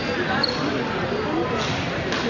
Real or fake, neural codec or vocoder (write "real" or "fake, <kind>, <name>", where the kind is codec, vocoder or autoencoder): real